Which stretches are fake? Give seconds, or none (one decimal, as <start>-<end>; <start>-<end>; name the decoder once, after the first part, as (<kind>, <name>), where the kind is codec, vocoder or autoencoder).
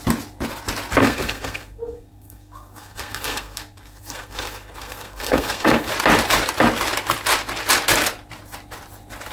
1.0-5.9 (codec, SNAC)